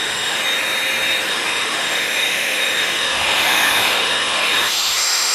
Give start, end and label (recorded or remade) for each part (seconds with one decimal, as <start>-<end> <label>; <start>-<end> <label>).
0.0-0.4 remade; 0.4-1.3 recorded; 1.3-5.3 remade